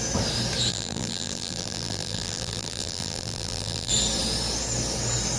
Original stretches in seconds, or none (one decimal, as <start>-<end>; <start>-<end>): 0.0-0.7; 3.9-5.4